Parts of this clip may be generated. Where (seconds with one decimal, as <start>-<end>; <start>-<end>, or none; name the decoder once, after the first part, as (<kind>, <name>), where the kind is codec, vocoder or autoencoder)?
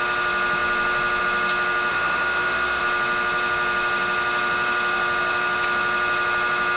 1.9-2.8 (autoencoder, DAC-VAE)